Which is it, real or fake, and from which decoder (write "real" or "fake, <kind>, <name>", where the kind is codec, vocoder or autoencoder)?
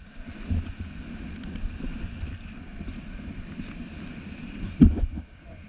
real